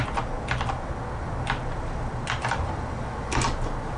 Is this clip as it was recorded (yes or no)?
yes